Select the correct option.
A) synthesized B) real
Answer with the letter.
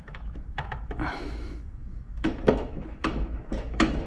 A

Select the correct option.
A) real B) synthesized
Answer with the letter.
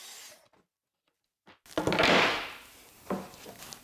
A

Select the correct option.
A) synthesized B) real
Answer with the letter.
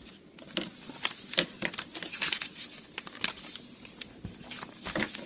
B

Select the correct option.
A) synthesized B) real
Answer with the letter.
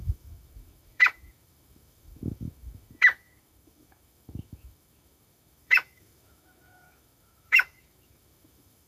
A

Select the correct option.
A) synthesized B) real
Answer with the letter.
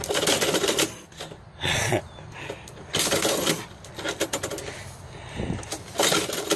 B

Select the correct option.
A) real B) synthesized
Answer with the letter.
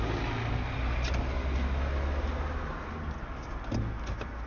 A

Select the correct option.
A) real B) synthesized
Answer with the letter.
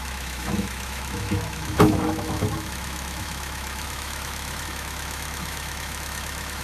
B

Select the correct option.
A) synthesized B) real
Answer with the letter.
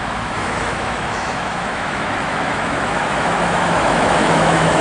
A